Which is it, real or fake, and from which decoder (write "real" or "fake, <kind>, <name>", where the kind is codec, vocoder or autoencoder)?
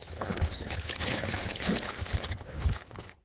fake, codec, HILCodec